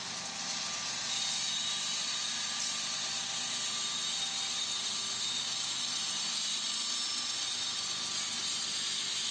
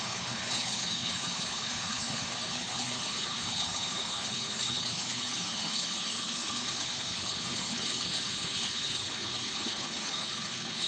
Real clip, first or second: first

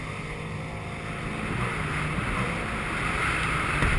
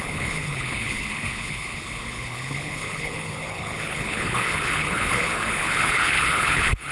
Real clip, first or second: first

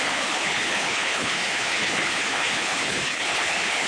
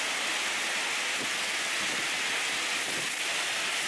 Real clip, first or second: second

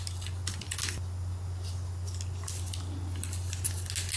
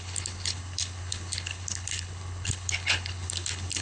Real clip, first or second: first